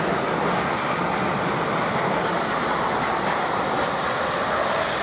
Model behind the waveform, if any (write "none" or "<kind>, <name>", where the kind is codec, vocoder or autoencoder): vocoder, BigVGAN v2